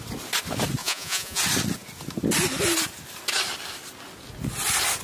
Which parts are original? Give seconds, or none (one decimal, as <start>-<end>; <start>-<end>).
0.0-0.8; 1.4-5.0